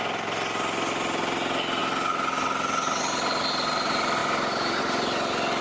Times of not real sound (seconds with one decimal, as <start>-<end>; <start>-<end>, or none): 4.2-4.8